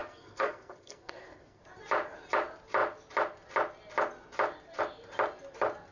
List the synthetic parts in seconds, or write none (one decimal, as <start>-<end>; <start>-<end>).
0.0-1.6